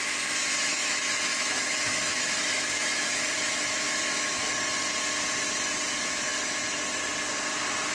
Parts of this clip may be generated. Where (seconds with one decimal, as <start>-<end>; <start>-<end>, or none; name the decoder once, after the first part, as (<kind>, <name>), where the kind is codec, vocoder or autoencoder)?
0.7-4.5 (autoencoder, DAC-VAE)